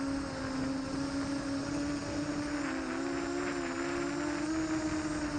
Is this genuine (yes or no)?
yes